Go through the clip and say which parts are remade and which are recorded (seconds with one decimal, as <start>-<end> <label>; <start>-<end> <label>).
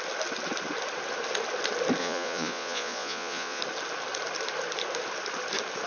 0.0-2.0 recorded; 2.0-3.6 remade; 3.6-5.9 recorded